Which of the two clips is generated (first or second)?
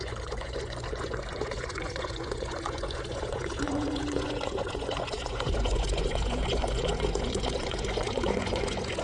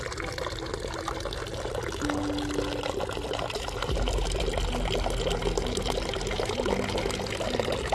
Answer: first